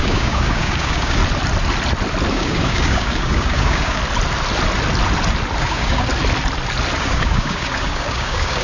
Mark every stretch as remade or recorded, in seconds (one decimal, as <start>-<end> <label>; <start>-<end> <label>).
0.0-1.2 remade; 1.2-2.3 recorded; 2.3-4.0 remade; 4.0-5.6 recorded; 5.6-6.1 remade; 6.1-7.0 recorded; 7.0-8.6 remade